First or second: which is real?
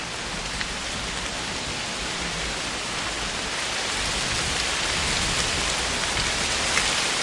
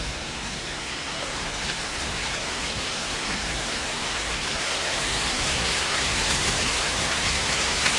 first